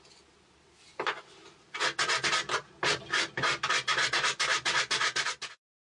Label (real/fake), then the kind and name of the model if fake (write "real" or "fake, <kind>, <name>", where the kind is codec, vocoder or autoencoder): real